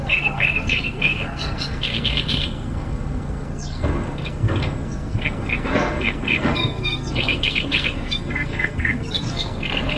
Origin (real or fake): fake